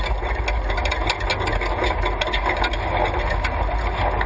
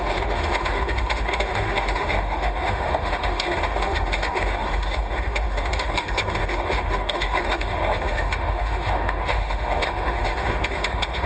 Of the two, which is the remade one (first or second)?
second